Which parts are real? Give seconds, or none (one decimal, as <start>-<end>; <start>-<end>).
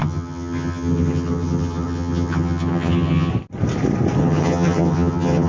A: 3.3-4.2